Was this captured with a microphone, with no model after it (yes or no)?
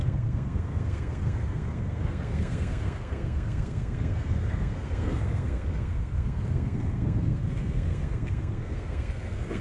no